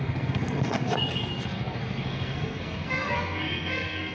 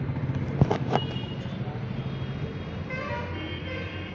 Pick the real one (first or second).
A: second